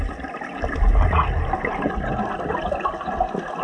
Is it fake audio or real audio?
real